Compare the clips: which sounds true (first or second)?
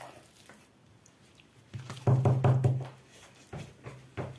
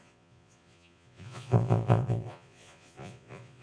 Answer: first